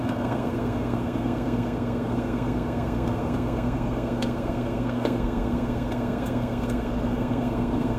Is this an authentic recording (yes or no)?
no